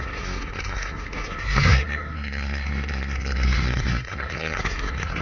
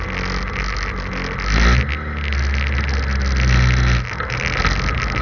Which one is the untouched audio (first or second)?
second